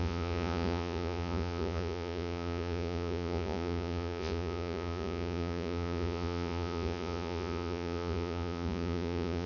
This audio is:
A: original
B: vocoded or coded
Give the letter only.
B